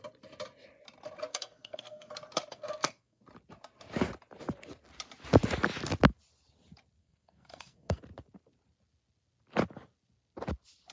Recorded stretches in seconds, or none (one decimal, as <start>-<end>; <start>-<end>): 0.0-1.3; 2.1-2.5; 3.2-7.0; 8.0-10.9